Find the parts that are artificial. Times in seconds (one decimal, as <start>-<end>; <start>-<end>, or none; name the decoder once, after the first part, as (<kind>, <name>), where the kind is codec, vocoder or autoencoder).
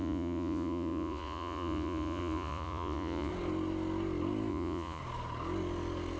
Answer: 0.0-3.3 (vocoder, Vocos); 4.5-5.0